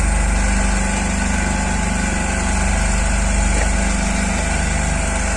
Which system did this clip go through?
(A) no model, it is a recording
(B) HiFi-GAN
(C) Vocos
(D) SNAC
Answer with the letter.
A